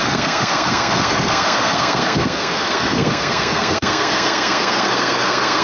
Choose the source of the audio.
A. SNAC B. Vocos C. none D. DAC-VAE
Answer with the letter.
A